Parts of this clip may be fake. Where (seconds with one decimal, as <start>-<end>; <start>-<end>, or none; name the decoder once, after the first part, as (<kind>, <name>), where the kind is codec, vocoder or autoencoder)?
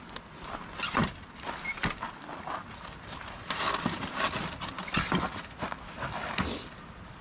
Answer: none